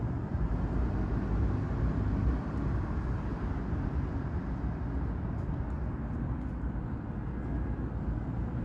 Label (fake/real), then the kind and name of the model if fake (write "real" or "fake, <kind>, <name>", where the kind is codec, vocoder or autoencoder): real